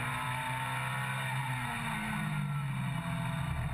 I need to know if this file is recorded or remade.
recorded